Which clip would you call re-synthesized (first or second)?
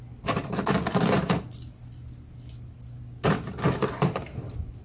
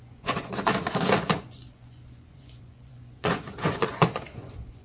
second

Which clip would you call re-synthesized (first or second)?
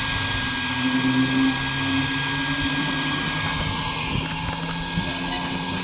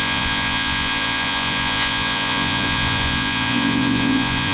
second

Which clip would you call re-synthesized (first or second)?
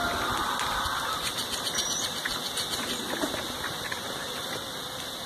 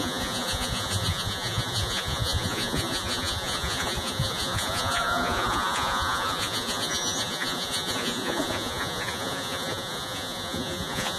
second